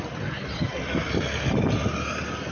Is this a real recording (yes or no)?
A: yes